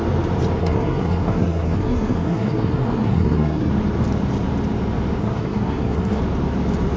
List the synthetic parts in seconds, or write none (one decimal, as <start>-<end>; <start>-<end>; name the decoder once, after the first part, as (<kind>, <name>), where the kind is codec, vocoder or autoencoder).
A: 0.6-3.7 (codec, SNAC); 5.2-6.2